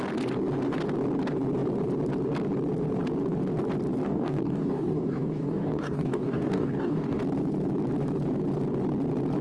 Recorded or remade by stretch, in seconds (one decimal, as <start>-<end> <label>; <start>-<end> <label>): 0.0-4.0 recorded; 4.0-7.2 remade; 7.2-9.4 recorded